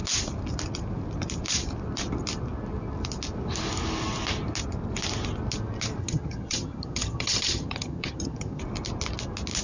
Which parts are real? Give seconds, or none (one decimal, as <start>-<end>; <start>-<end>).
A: 0.0-6.0; 8.6-9.6